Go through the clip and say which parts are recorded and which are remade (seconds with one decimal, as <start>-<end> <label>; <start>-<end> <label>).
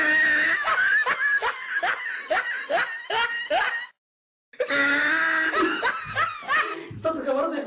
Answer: 0.0-7.7 recorded